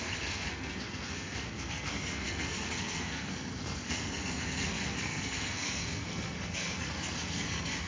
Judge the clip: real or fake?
fake